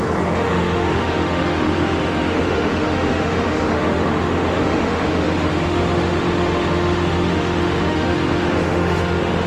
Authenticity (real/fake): fake